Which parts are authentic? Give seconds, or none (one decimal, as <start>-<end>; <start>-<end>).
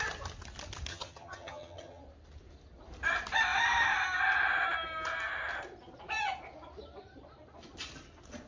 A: 0.0-0.9; 2.0-8.5